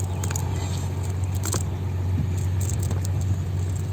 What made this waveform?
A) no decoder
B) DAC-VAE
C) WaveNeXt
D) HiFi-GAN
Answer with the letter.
A